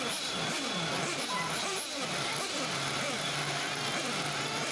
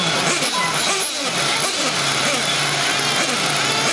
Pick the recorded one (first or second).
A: second